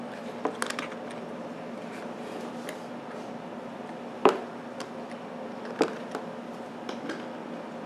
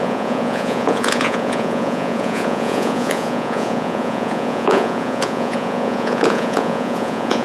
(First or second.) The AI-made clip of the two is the second